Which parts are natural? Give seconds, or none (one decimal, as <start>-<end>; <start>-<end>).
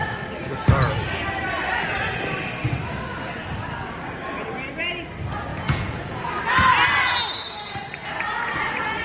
0.0-5.5; 6.2-9.0